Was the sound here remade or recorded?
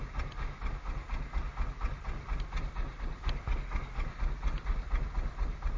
recorded